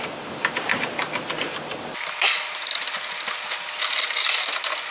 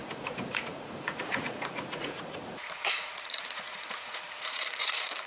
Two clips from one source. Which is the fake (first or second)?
second